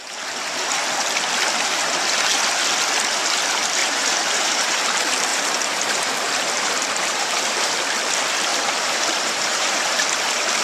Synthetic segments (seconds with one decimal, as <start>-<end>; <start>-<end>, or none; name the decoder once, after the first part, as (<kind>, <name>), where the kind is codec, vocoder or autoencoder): 3.8-4.8 (vocoder, BigVGAN v2); 5.3-7.7; 8.5-9.9